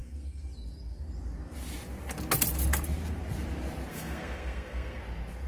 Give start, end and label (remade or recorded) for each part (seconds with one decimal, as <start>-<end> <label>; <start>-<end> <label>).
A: 0.0-0.5 remade; 0.5-3.9 recorded; 3.9-5.0 remade; 5.0-5.5 recorded